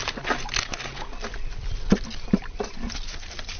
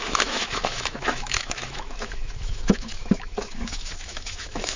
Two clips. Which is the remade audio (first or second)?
second